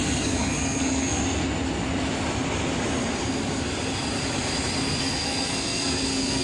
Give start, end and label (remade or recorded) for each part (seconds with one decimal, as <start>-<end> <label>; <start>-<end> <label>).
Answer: 0.0-1.2 remade; 1.2-5.0 recorded; 5.0-6.4 remade